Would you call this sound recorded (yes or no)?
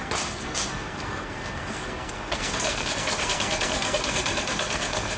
no